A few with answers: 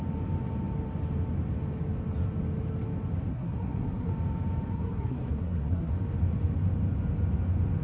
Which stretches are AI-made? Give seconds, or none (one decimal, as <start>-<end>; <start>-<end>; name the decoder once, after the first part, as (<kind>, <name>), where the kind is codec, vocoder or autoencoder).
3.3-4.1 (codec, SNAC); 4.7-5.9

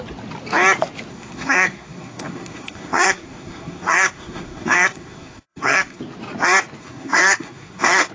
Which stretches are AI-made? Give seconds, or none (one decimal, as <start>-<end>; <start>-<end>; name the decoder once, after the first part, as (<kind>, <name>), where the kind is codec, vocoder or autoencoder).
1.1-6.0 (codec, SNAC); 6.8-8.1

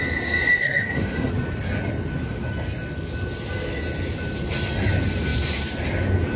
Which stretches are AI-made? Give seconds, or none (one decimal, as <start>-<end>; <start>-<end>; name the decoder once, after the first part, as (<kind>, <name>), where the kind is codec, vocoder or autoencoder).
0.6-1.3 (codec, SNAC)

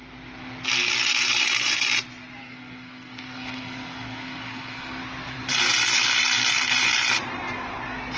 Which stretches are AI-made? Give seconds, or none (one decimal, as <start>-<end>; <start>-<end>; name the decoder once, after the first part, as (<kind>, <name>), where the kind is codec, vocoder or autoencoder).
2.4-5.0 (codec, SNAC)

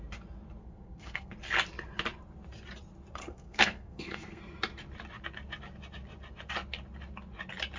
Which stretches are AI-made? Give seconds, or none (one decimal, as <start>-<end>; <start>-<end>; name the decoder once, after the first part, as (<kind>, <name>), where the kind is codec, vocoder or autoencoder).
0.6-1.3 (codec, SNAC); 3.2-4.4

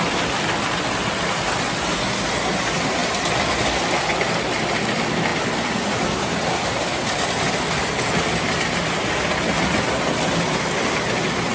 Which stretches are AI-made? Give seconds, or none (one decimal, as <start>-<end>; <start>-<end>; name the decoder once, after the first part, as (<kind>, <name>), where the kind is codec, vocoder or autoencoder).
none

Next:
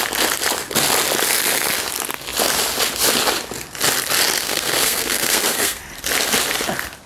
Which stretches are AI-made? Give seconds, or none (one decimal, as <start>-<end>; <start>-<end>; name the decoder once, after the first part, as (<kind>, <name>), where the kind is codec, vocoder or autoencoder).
4.4-5.8 (codec, SNAC)